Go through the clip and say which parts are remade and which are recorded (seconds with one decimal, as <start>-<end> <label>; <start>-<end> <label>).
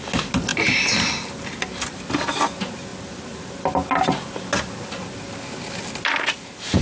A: 0.0-6.8 recorded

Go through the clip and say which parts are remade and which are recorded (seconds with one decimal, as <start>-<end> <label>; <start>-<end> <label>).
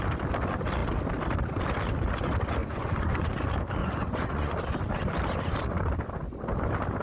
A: 0.0-2.6 recorded; 2.6-3.3 remade; 3.3-3.8 recorded; 3.8-4.6 remade; 4.6-7.0 recorded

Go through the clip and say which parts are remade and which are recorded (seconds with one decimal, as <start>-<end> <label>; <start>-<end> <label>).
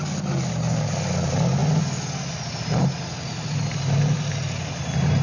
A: 0.0-5.2 recorded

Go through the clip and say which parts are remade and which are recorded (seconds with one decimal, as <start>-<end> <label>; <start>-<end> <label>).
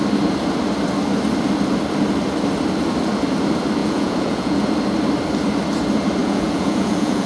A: 0.0-3.8 recorded; 3.8-4.7 remade; 4.7-6.2 recorded; 6.2-7.3 remade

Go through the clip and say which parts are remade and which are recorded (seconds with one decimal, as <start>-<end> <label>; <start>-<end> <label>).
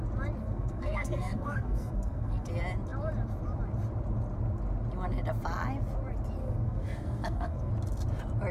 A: 0.0-0.4 recorded; 0.4-2.5 remade; 2.5-6.4 recorded; 6.4-7.7 remade; 7.7-8.5 recorded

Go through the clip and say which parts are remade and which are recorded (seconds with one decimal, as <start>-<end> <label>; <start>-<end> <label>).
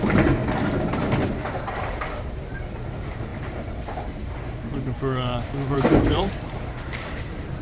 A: 0.0-0.4 remade; 0.4-1.8 recorded; 1.8-7.6 remade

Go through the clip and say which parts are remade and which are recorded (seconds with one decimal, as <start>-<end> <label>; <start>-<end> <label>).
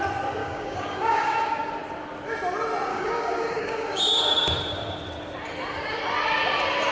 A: 0.0-0.4 recorded; 0.4-1.7 remade; 1.7-2.9 recorded; 2.9-4.0 remade; 4.0-6.9 recorded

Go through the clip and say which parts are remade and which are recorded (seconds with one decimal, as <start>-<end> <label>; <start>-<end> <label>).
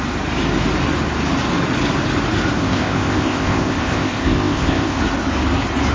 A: 0.0-2.6 recorded; 2.6-5.0 remade; 5.0-5.9 recorded